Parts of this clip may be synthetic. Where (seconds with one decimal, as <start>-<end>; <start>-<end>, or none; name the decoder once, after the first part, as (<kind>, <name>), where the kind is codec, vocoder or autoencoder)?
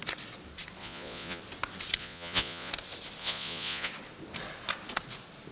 0.8-1.4 (vocoder, Vocos); 2.0-2.7; 3.2-3.9